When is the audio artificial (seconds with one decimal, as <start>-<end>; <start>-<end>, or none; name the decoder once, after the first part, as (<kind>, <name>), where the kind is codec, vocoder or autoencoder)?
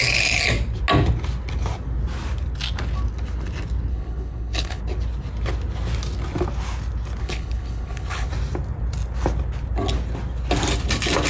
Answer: 3.9-4.8 (codec, HILCodec); 7.2-8.3